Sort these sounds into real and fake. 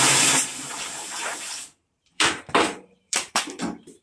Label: fake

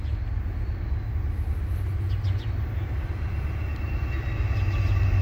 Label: real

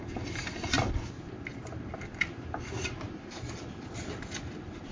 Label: real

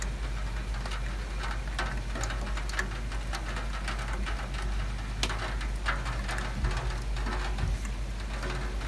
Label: real